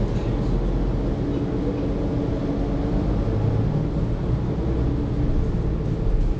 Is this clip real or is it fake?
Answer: real